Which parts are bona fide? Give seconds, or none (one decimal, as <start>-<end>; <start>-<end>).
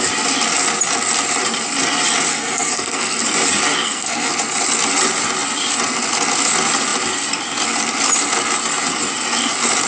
0.0-2.3; 3.2-3.8; 4.3-9.9